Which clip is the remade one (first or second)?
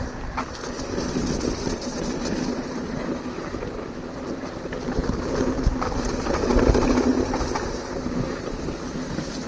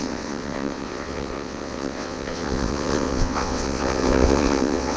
second